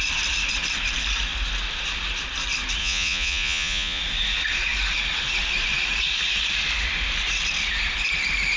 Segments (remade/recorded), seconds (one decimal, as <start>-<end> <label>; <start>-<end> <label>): 0.0-2.8 recorded; 2.8-4.0 remade; 4.0-8.6 recorded